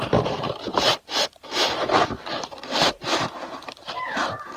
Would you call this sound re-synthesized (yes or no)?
yes